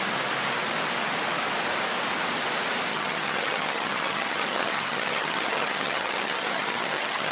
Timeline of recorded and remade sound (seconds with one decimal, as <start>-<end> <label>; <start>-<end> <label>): 0.0-2.9 recorded; 2.9-7.3 remade